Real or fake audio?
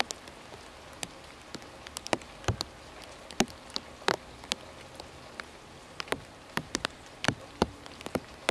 real